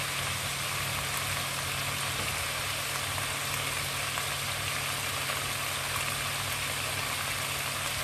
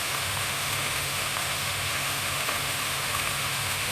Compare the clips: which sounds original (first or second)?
first